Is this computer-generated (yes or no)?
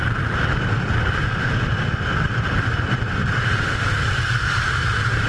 yes